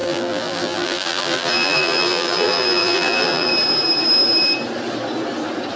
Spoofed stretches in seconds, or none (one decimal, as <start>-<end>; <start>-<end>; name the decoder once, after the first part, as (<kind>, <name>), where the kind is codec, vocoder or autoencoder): 0.0-3.5 (vocoder, BigVGAN v2)